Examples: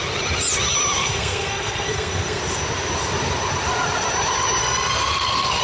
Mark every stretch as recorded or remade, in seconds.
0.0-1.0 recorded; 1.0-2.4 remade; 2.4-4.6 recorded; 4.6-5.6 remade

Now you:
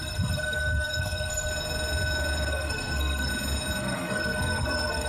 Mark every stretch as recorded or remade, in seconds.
0.0-1.5 remade; 1.5-2.5 recorded; 2.5-3.3 remade; 3.3-3.8 recorded; 3.8-5.1 remade